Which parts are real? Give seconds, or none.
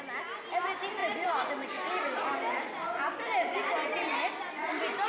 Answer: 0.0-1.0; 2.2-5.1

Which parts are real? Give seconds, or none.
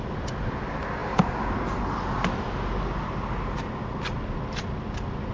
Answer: 0.0-5.3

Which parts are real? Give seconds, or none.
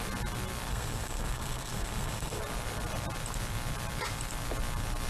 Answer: 0.0-0.7; 2.4-5.1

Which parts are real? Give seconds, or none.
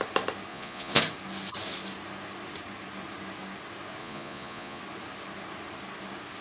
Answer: 0.0-0.5; 1.0-4.0; 4.8-6.4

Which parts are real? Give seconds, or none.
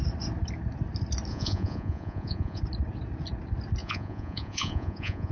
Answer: 0.0-1.3; 2.6-3.8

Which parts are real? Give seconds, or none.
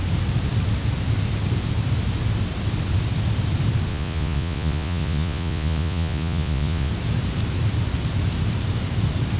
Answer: 0.0-3.9; 6.9-9.4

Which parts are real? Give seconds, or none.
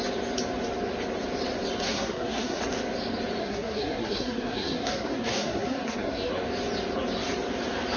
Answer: 0.0-1.8; 2.6-3.4; 6.3-8.0